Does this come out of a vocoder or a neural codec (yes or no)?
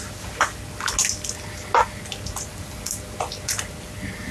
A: no